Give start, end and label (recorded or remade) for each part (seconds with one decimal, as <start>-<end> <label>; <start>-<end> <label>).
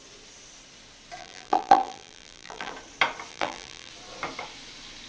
0.0-1.2 recorded; 1.2-2.7 remade; 2.7-3.3 recorded; 3.3-3.9 remade; 3.9-5.1 recorded